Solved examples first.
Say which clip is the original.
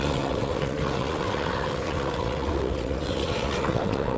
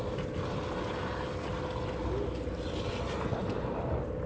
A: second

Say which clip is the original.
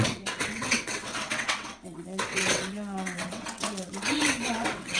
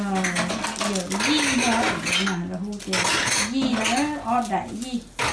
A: second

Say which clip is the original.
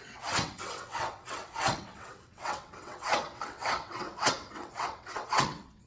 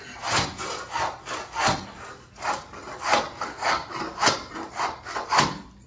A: second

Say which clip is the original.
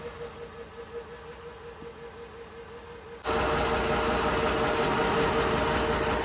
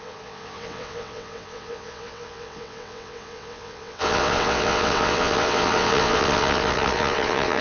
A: first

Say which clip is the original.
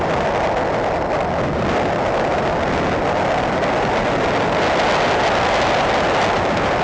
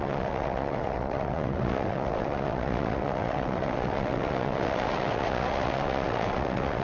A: first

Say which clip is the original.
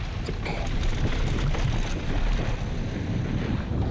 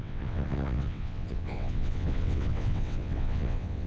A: first